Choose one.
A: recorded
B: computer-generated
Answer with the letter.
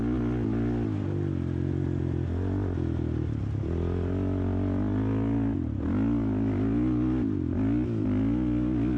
A